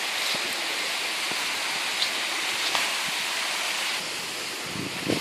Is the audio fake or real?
real